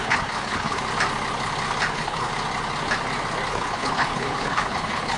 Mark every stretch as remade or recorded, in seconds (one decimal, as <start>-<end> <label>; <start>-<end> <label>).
0.0-0.8 remade; 0.8-1.9 recorded; 1.9-2.3 remade; 2.3-3.5 recorded; 3.5-5.2 remade